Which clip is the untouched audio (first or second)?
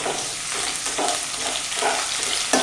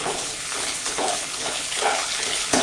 first